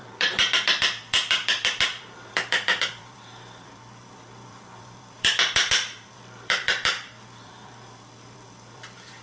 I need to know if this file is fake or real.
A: fake